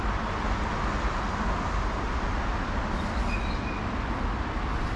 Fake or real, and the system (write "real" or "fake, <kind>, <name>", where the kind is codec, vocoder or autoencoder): real